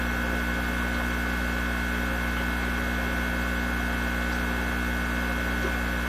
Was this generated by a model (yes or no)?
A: no